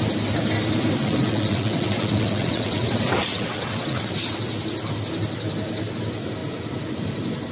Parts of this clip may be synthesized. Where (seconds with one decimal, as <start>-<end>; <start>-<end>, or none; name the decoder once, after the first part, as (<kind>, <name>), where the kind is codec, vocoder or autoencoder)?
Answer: 1.0-2.9 (vocoder, WaveNeXt); 3.3-4.1